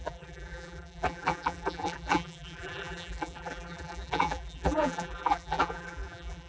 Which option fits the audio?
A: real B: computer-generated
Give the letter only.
B